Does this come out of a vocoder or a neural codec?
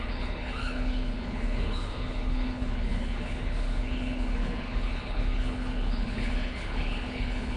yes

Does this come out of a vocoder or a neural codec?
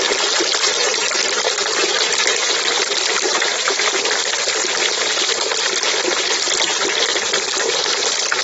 no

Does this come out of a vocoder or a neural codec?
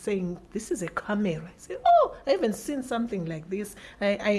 yes